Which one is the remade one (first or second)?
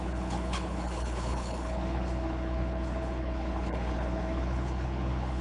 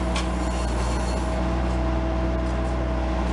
first